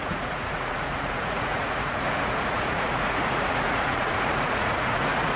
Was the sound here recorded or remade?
remade